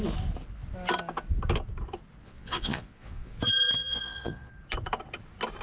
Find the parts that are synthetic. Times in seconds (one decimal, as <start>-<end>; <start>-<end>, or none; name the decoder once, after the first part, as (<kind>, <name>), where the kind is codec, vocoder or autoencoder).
2.2-3.3 (vocoder, Vocos); 3.8-4.5